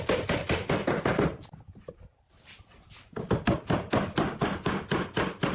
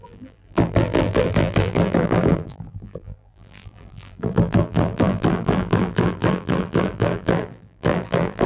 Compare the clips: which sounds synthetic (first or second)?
second